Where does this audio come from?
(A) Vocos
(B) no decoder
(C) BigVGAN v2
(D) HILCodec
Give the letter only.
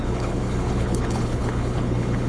D